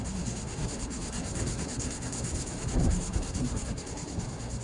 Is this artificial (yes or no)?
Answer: yes